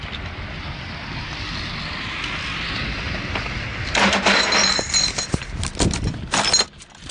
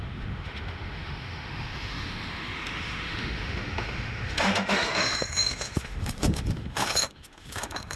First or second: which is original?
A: first